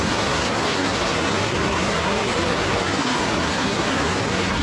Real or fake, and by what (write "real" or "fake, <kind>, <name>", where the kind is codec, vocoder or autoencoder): fake, codec, SNAC